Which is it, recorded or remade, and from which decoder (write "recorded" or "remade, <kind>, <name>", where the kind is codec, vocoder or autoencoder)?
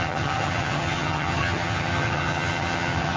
remade, vocoder, HiFi-GAN